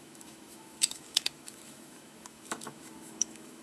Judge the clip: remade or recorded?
remade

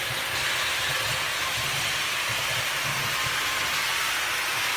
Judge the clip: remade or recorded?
recorded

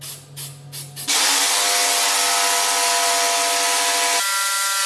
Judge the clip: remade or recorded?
recorded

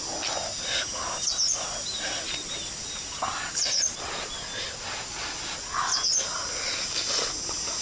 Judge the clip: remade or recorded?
recorded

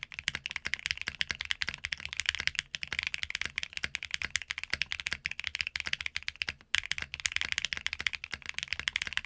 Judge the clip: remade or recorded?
recorded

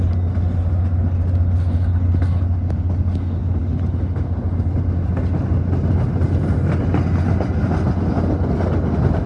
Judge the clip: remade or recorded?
recorded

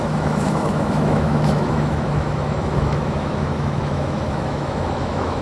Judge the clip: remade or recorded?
remade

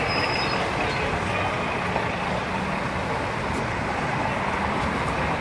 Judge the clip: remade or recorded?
recorded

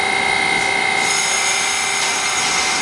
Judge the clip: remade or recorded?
recorded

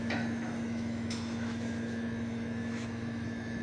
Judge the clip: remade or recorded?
remade